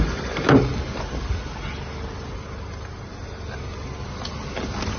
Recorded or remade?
recorded